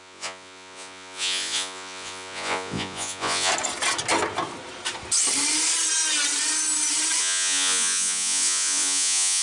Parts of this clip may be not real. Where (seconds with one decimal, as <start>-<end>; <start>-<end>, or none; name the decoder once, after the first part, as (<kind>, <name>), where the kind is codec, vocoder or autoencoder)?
0.0-3.5 (vocoder, Vocos); 7.2-9.4